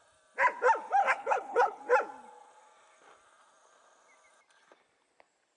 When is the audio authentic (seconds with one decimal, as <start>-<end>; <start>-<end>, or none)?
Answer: 0.0-1.0; 1.8-5.6